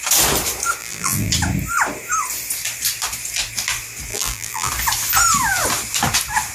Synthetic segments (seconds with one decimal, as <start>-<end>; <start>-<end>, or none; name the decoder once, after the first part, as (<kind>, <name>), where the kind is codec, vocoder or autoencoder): 0.8-1.3 (vocoder, BigVGAN v2); 4.1-4.7